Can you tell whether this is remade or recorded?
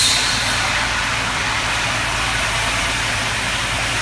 recorded